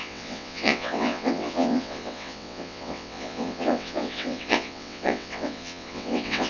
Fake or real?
fake